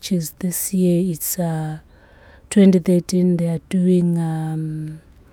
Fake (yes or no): yes